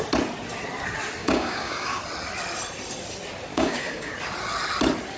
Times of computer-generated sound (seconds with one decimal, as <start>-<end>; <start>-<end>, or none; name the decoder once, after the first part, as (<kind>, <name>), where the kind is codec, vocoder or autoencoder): 1.2-2.0 (codec, DAC); 3.5-4.1